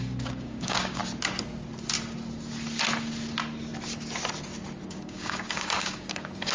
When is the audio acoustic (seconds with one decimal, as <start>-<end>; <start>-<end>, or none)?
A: 1.0-4.9